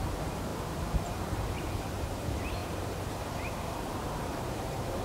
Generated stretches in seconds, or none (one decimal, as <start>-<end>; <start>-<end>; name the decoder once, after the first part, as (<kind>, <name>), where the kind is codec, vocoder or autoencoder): 0.0-5.0 (vocoder, BigVGAN v2)